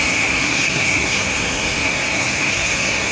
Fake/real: fake